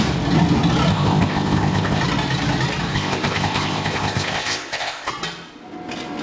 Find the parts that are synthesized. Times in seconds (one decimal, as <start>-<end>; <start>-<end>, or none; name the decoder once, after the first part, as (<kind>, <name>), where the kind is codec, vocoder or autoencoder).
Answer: 0.9-2.0 (codec, ZipCodec); 2.9-5.1